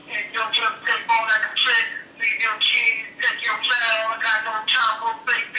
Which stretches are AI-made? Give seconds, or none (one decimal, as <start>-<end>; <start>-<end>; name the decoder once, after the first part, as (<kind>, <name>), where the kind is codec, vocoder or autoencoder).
0.0-1.5 (vocoder, BigVGAN v2); 3.3-4.1; 4.7-5.6